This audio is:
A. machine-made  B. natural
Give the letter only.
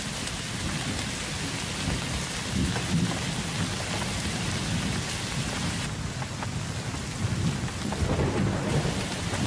B